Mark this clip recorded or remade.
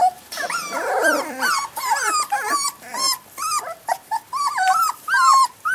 remade